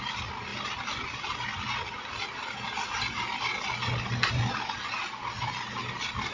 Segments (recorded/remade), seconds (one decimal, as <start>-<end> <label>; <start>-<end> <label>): 0.0-6.3 recorded